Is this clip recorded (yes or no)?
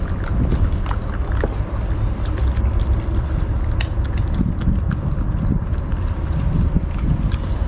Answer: yes